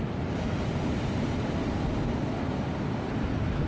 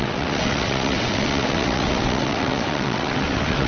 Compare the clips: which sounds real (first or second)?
first